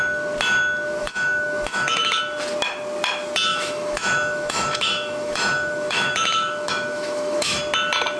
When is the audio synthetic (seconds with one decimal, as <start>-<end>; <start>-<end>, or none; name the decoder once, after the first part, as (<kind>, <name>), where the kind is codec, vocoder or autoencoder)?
1.0-2.2 (autoencoder, DAC-VAE); 3.5-7.6